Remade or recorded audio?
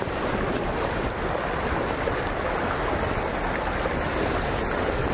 recorded